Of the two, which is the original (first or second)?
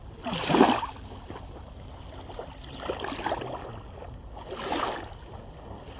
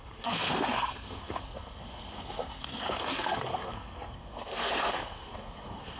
first